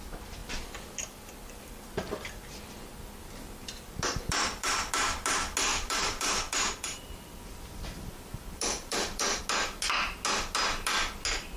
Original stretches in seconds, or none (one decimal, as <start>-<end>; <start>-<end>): 0.0-0.4; 4.9-5.7; 9.4-11.6